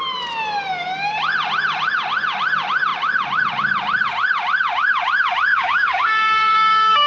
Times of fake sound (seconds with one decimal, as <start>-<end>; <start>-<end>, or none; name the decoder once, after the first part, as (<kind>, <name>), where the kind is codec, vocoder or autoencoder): 5.5-7.1 (codec, DAC)